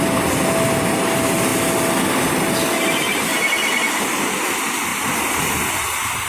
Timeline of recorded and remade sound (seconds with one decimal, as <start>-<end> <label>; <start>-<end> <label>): 0.0-6.3 recorded